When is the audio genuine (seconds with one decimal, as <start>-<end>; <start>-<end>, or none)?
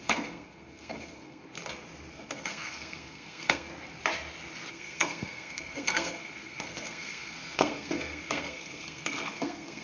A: 1.4-2.1; 3.7-4.7